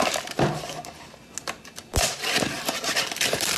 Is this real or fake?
real